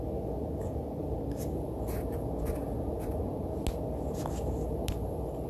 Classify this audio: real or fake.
real